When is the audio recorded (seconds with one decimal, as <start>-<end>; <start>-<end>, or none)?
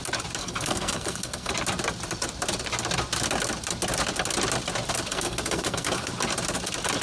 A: 0.0-0.4; 1.5-5.1; 6.1-7.0